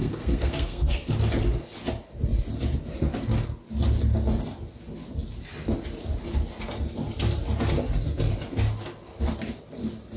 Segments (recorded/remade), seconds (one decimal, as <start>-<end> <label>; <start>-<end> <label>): 0.0-1.1 remade; 1.1-10.2 recorded